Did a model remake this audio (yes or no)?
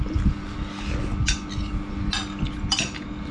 no